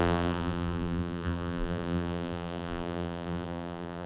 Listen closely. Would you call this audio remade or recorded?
remade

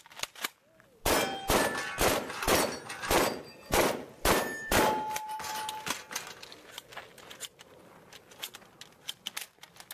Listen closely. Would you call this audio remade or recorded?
recorded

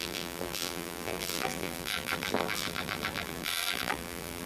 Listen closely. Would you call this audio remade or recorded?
remade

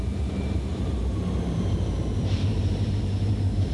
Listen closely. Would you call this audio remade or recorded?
remade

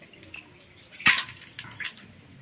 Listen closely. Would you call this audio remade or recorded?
recorded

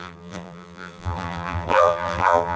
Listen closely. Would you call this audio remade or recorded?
remade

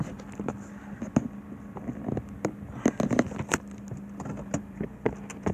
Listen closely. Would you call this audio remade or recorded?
recorded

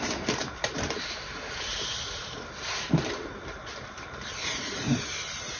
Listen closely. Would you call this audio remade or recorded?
remade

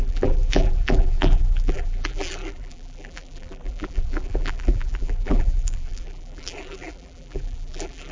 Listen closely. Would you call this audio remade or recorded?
remade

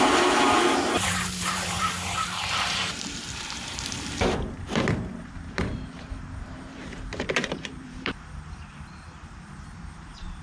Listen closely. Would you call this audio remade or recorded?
remade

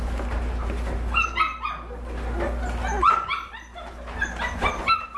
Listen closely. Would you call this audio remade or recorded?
recorded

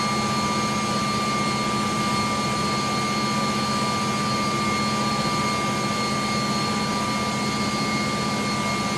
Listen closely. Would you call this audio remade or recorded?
recorded